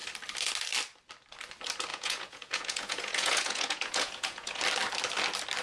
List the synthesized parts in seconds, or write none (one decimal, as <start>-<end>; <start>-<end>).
1.9-4.6